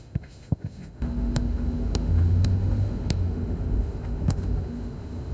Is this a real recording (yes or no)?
no